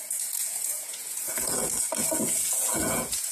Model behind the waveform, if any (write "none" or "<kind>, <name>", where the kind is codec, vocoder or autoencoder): vocoder, Vocos